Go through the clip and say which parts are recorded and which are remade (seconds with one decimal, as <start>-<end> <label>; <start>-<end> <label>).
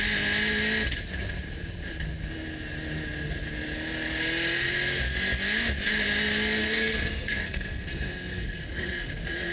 0.0-6.6 recorded; 6.6-9.1 remade; 9.1-9.5 recorded